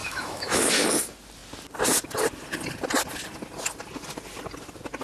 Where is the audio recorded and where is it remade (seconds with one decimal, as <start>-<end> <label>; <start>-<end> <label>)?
0.0-0.6 remade; 0.6-5.0 recorded